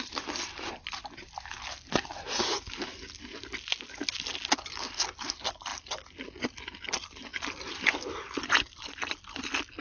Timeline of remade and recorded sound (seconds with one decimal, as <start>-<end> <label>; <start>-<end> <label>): 0.0-9.8 recorded